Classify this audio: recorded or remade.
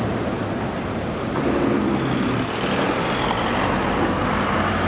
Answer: recorded